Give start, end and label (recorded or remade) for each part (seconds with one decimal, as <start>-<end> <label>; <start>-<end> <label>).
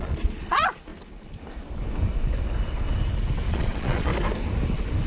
0.0-0.9 remade; 0.9-3.5 recorded; 3.5-4.1 remade; 4.1-5.1 recorded